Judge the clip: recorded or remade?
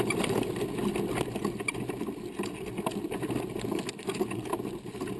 recorded